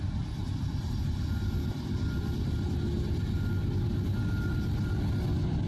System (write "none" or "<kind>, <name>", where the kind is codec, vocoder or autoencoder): none